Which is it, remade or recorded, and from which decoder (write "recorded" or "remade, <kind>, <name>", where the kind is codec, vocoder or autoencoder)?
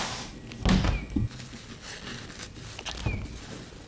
recorded